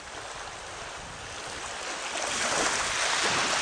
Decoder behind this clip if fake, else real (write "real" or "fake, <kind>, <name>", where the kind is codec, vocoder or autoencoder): real